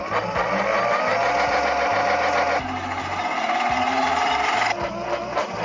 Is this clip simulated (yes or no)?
no